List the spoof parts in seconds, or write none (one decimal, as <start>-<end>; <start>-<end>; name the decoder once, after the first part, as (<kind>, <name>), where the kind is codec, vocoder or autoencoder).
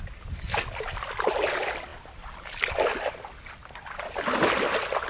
none